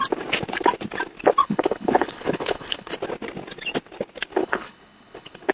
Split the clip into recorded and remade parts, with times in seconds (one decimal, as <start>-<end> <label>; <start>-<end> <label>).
0.0-1.4 recorded; 1.4-2.9 remade; 2.9-4.4 recorded; 4.4-5.5 remade